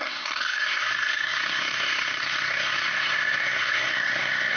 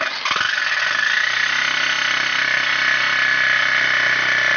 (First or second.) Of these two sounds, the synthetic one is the first